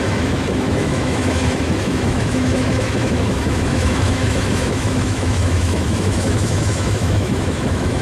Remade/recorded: remade